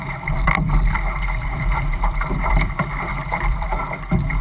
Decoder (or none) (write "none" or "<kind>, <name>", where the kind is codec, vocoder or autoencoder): vocoder, BigVGAN v2